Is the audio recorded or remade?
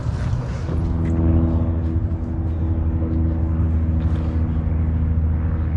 recorded